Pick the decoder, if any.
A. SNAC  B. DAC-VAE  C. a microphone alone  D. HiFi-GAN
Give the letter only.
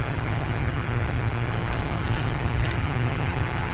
D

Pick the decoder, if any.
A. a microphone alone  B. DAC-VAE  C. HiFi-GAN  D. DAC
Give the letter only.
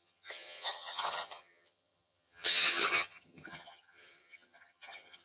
C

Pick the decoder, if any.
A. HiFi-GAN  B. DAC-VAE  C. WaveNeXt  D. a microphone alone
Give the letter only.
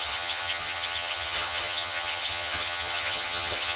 A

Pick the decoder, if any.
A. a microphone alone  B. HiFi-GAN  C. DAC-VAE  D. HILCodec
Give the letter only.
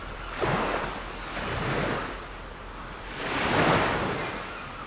A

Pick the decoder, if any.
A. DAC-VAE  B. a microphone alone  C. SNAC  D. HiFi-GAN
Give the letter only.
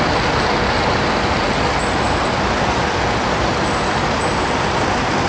B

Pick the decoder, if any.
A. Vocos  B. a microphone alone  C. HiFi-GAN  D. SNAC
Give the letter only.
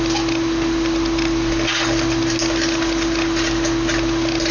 B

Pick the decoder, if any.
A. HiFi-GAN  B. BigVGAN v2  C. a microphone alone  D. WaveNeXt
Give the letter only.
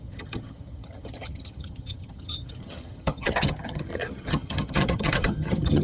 A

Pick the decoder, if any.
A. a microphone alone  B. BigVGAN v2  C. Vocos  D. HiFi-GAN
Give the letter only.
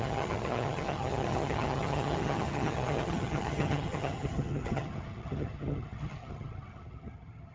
D